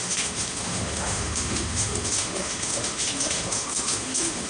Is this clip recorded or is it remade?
remade